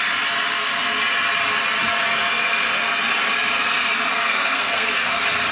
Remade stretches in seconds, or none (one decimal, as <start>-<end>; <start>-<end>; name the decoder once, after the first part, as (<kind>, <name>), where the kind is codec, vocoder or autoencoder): 4.1-5.1 (codec, SNAC)

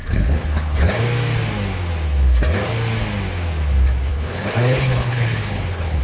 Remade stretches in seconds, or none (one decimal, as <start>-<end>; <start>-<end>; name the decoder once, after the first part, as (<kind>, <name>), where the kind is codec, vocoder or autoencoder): 0.0-0.9 (codec, HILCodec); 4.1-6.0

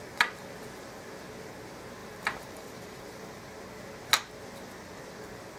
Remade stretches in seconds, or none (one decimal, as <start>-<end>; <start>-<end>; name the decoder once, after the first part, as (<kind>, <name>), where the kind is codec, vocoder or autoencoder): 2.0-3.4 (vocoder, BigVGAN v2)